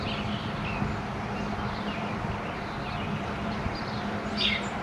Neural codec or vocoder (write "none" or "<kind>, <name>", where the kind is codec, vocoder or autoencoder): none